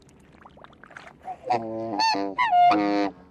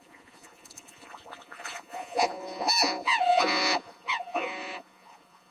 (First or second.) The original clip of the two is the first